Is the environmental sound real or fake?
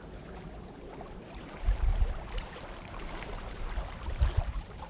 fake